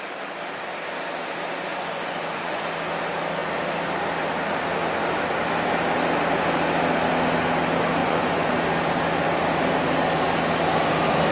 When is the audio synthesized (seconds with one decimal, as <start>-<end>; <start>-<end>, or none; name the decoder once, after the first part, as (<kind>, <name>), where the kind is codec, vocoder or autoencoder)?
1.7-2.6 (vocoder, Vocos); 8.0-8.5